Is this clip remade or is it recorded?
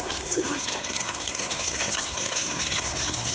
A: remade